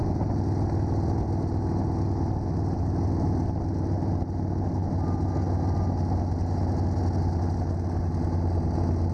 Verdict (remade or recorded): recorded